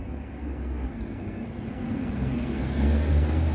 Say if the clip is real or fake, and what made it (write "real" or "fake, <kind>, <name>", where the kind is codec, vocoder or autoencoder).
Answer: fake, codec, SNAC